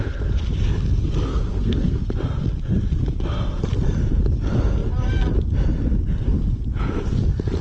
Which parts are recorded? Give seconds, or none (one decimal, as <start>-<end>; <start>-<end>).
0.0-1.3; 2.0-7.6